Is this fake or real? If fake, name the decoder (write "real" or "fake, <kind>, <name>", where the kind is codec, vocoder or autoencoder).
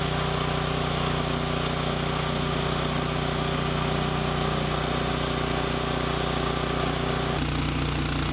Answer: real